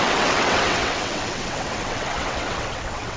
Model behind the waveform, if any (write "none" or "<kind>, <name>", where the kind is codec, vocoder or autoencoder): vocoder, WaveNeXt